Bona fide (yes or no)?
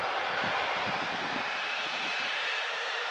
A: no